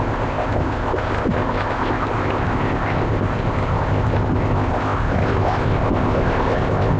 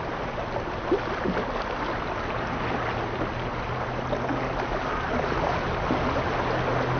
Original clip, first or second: second